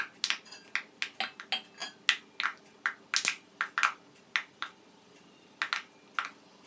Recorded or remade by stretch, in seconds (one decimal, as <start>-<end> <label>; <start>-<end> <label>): 0.0-6.7 recorded